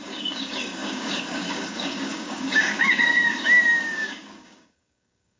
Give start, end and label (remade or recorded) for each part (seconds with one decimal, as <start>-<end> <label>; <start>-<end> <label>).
0.0-5.4 remade